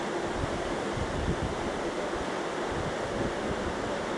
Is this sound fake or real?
real